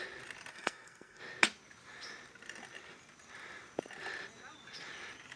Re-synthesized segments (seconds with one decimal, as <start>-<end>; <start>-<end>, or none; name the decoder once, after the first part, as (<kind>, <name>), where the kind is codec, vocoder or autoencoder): 0.5-1.2 (codec, SNAC)